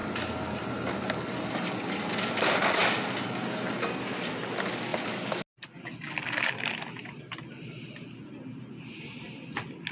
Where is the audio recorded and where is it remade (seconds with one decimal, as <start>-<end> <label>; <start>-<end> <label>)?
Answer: 0.0-7.0 recorded; 7.0-7.5 remade; 7.5-9.9 recorded